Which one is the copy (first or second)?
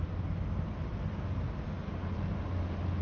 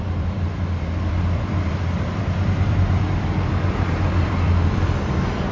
second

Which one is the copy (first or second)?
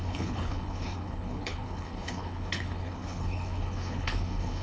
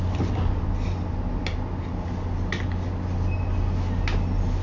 first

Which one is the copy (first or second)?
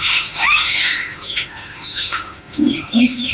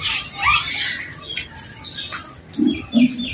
first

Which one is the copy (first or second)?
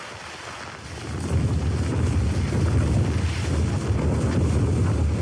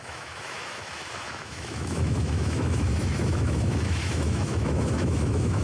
second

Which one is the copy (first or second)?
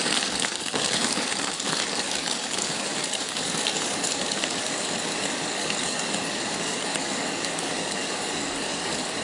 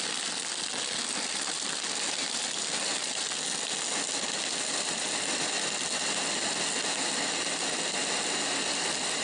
first